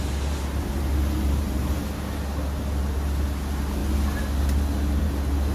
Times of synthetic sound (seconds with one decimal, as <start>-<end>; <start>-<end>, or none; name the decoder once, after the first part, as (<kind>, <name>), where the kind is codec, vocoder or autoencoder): none